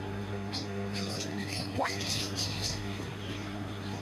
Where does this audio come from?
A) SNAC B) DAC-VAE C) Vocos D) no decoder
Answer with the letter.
A